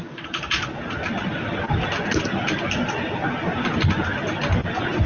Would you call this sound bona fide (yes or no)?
yes